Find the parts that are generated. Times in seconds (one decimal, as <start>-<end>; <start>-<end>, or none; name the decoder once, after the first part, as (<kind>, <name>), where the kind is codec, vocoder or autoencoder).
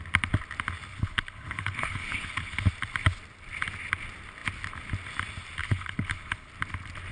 0.9-2.7 (codec, HILCodec); 5.6-6.5